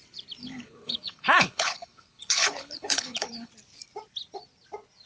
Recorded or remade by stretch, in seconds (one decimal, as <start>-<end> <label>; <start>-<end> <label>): 0.0-0.4 recorded; 0.4-3.5 remade; 3.5-5.1 recorded